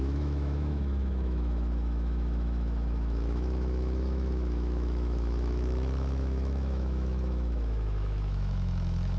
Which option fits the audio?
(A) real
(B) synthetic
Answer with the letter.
B